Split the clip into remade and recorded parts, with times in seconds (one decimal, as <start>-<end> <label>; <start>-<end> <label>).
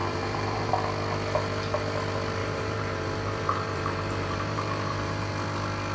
0.0-0.7 remade; 0.7-2.4 recorded; 2.4-5.3 remade; 5.3-5.9 recorded